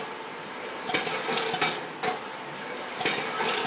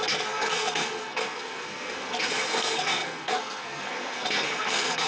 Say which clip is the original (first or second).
first